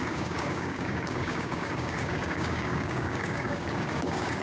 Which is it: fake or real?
fake